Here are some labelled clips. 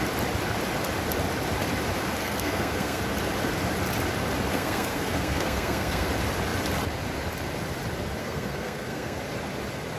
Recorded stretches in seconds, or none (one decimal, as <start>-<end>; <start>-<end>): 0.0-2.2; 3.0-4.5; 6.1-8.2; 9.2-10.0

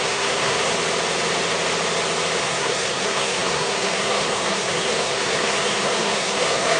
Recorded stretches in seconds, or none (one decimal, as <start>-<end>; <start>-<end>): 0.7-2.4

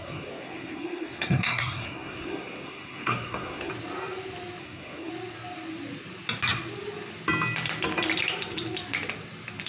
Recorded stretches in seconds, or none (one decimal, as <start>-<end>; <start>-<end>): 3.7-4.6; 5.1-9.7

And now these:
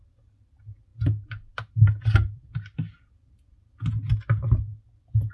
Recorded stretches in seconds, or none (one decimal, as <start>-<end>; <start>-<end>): 0.0-5.3

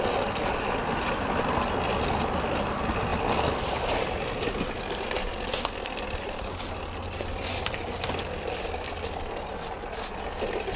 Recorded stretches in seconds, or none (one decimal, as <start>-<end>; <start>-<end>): 0.0-10.8

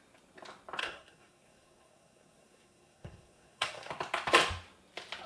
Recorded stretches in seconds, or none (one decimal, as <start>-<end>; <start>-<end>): 0.0-0.8; 3.9-5.3